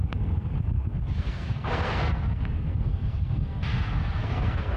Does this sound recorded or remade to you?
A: remade